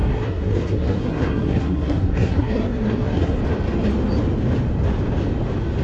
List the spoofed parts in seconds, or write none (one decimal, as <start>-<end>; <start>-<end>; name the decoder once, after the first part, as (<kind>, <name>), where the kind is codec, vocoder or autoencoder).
0.0-3.4 (codec, SNAC)